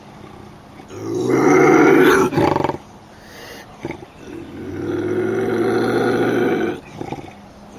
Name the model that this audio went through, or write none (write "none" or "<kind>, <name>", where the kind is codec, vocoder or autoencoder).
none